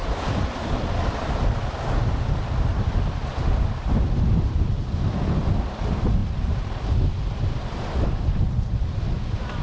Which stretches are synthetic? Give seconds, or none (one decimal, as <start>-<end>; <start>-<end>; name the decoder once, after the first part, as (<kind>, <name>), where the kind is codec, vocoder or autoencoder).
0.0-1.0 (vocoder, BigVGAN v2); 6.2-9.0